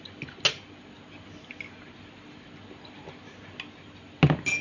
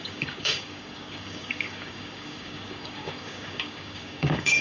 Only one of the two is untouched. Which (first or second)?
first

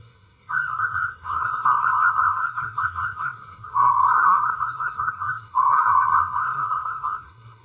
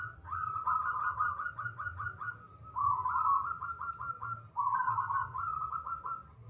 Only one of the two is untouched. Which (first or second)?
second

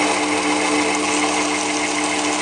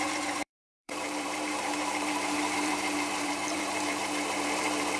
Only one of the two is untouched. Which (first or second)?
first